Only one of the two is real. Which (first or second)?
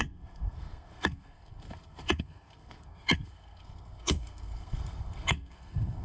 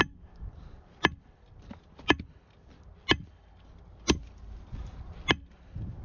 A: second